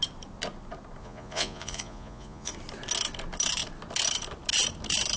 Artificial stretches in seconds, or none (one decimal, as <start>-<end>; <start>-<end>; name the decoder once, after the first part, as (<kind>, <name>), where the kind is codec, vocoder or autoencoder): 1.0-2.5 (vocoder, Vocos)